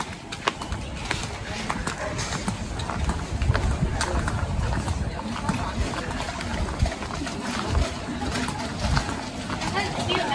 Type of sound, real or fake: real